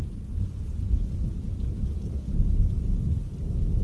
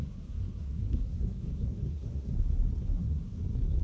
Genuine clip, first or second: first